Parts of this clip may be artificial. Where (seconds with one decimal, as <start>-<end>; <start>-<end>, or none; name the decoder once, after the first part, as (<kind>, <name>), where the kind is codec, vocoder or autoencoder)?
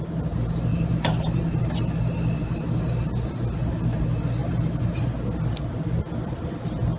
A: 0.7-1.8 (vocoder, BigVGAN v2); 4.4-5.1